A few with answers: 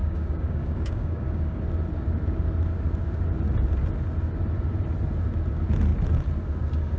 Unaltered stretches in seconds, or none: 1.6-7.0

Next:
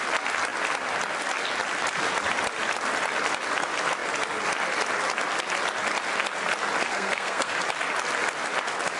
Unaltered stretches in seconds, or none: 0.0-6.9; 7.5-9.0

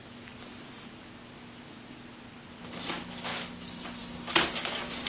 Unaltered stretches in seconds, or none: 0.0-5.1

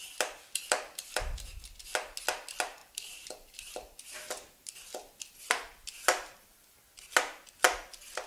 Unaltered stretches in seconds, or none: 0.0-2.8; 4.0-8.3